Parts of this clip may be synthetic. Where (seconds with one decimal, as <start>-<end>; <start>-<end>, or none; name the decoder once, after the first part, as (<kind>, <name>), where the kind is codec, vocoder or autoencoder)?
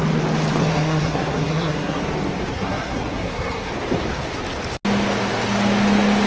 0.6-2.0 (codec, SNAC); 2.5-3.7